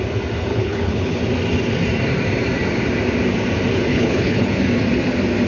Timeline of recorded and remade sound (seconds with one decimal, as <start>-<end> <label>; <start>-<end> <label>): 0.0-0.5 recorded; 0.5-1.2 remade; 1.2-3.9 recorded; 3.9-4.6 remade; 4.6-5.5 recorded